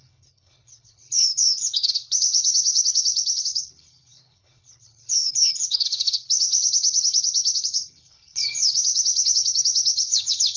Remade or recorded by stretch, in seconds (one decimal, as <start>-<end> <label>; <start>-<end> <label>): 0.0-10.6 remade